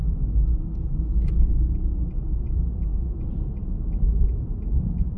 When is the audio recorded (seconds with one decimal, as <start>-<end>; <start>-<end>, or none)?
0.0-1.5